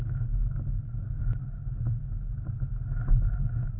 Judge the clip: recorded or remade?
recorded